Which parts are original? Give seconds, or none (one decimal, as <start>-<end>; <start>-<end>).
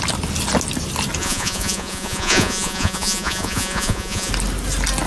0.0-1.2; 4.3-5.1